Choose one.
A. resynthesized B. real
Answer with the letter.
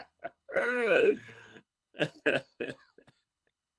A